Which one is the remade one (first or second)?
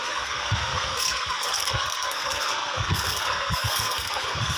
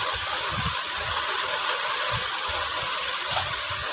first